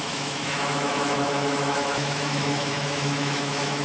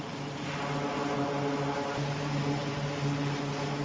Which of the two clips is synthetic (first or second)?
first